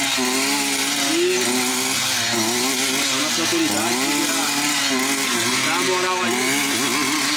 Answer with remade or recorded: recorded